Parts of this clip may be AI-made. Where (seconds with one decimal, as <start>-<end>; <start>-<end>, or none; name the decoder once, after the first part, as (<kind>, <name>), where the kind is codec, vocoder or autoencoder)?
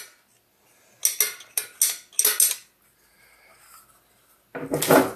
none